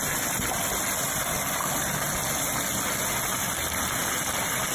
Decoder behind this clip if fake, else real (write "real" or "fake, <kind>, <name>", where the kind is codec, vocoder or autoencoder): real